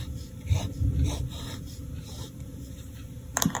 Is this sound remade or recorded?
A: remade